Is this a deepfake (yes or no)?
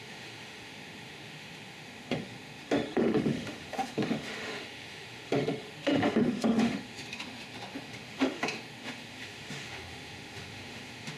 yes